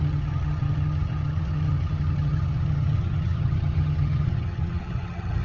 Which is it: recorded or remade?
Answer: remade